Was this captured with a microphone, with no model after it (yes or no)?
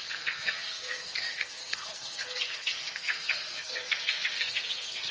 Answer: no